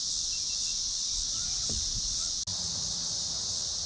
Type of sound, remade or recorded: recorded